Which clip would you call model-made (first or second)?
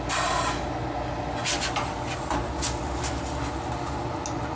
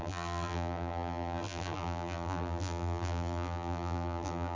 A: second